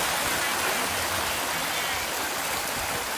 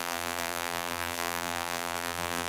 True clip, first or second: first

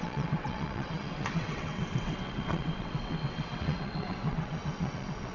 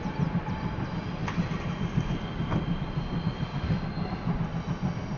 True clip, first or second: second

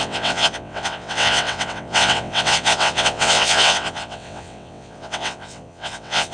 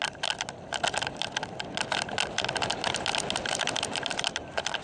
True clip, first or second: second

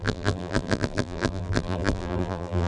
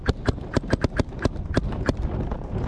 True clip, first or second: second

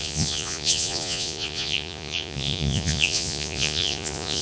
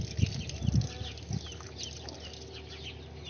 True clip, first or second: second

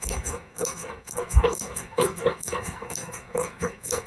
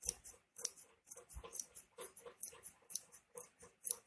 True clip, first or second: second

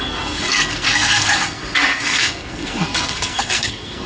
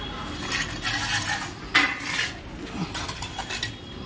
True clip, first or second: second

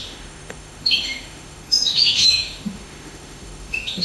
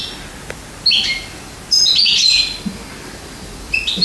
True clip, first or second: second